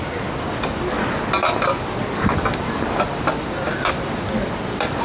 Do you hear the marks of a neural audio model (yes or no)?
no